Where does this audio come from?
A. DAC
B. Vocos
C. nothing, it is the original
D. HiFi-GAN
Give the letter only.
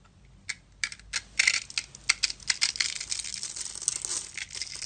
C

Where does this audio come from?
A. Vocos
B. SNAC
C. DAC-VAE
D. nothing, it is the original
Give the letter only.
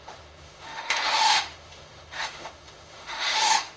C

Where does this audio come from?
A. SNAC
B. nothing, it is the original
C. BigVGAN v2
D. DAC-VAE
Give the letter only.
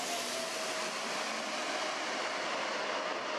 B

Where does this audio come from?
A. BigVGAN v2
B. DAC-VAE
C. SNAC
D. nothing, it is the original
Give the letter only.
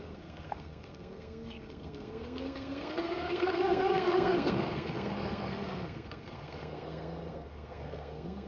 C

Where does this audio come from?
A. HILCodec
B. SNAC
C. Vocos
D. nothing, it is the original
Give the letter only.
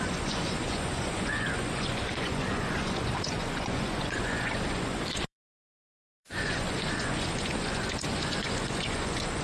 C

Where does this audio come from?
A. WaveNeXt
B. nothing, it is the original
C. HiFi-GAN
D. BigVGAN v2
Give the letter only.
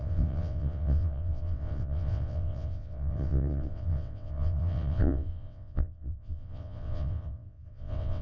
A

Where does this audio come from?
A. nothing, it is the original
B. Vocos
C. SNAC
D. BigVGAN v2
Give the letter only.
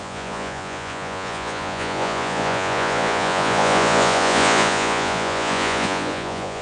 B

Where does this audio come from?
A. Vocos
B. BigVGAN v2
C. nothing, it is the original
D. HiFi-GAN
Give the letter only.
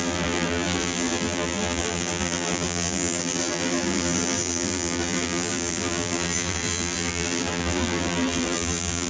B